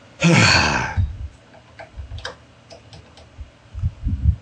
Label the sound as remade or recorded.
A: recorded